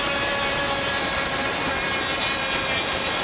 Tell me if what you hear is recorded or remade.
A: recorded